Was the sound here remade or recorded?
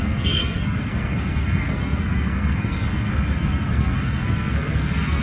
remade